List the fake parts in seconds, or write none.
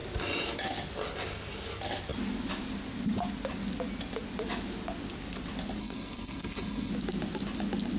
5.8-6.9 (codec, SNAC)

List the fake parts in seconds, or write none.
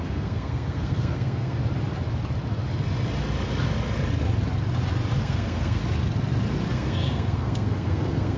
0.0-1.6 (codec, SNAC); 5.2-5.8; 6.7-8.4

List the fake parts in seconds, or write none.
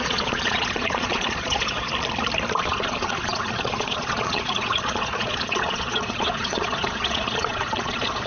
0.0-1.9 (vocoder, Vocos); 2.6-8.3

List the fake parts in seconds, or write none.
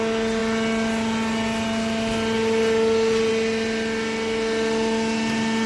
none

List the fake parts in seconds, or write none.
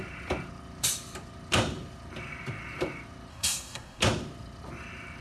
3.3-4.0 (codec, SNAC)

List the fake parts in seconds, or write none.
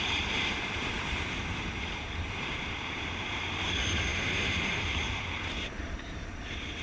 0.0-6.8 (vocoder, BigVGAN v2)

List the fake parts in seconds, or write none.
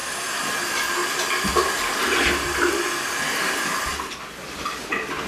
none